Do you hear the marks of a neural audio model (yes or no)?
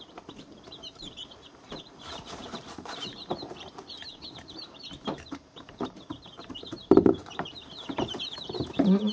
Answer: yes